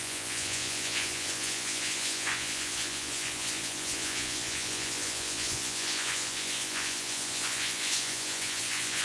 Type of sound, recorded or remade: remade